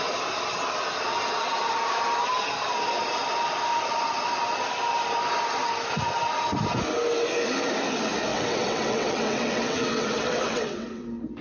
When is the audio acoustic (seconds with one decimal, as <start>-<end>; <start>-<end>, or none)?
0.0-8.3; 11.0-11.4